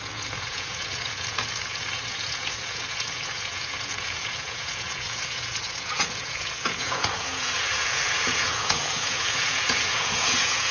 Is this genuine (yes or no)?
no